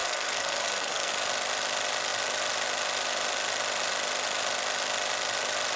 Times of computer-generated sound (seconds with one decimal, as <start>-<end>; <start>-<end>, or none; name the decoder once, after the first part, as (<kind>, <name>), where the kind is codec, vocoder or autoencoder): 0.0-1.1 (codec, SNAC)